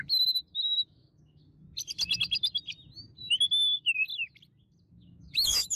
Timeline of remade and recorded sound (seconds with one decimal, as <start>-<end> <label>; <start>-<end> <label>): 0.0-1.4 remade; 1.4-4.9 recorded; 4.9-5.8 remade